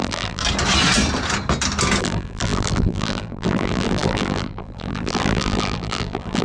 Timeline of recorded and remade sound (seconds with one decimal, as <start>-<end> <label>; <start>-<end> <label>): 0.0-0.4 remade; 0.4-2.0 recorded; 2.0-6.4 remade